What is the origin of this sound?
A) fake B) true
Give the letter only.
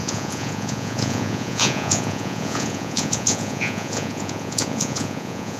A